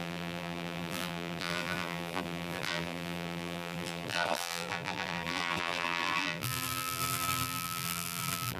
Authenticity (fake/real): fake